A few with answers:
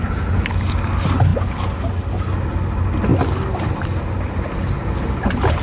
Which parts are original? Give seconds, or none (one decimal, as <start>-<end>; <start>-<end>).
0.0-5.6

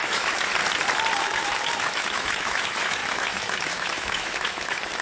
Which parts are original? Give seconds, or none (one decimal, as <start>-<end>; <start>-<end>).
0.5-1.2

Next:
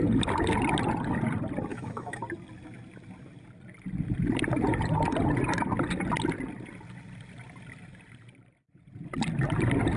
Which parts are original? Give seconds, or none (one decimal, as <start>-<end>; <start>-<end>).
0.0-1.7; 2.2-10.0